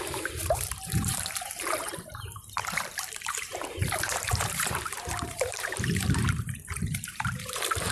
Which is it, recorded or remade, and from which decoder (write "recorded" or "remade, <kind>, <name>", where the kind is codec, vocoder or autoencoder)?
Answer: remade, vocoder, BigVGAN v2